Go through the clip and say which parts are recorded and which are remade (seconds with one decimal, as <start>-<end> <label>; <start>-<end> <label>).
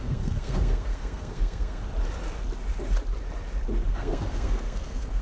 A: 0.0-1.8 remade; 1.8-3.9 recorded; 3.9-5.2 remade